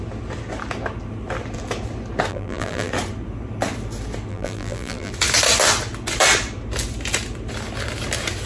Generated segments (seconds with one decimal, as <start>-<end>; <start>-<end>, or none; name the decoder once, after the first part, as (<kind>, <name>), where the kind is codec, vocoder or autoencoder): 2.3-2.9 (vocoder, BigVGAN v2); 4.3-5.1

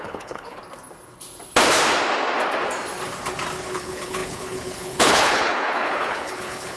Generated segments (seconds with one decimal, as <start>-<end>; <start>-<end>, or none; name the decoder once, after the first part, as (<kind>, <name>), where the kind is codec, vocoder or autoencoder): 0.0-0.6 (codec, HILCodec); 3.7-6.8

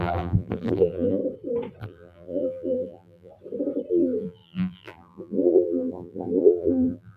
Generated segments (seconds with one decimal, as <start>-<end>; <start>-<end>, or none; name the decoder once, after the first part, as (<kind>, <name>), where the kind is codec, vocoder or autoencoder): 0.0-1.2 (vocoder, BigVGAN v2); 1.8-3.3; 3.9-7.2

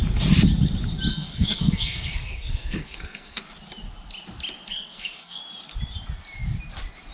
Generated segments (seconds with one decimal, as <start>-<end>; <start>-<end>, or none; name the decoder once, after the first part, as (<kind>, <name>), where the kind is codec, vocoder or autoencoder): 1.1-3.4 (codec, SNAC); 4.7-5.4

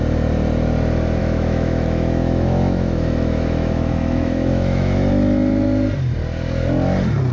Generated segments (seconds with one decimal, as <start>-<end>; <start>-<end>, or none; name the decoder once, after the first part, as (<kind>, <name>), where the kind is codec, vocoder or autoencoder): 1.2-5.1 (autoencoder, DAC-VAE)

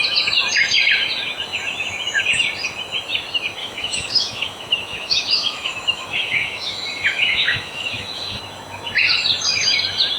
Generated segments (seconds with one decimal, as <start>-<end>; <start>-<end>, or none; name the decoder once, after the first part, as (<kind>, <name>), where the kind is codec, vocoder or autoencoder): 3.6-8.4 (autoencoder, DAC-VAE)